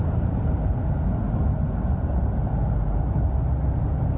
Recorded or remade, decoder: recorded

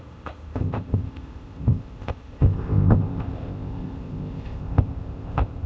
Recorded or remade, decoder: remade, codec, ZipCodec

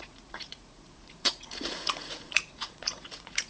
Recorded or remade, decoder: remade, vocoder, Vocos